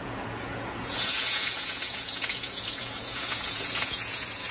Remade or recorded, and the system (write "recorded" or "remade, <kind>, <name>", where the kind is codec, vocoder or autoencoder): remade, vocoder, Vocos